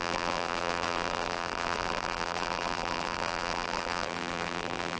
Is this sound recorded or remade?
remade